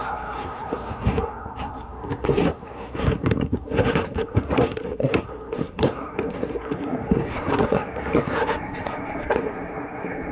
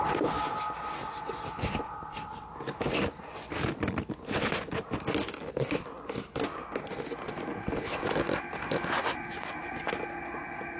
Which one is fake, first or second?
first